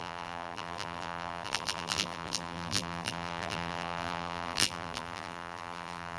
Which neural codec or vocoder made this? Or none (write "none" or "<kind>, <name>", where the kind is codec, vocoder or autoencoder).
vocoder, BigVGAN v2